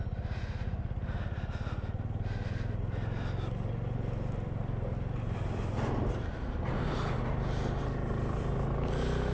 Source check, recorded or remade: recorded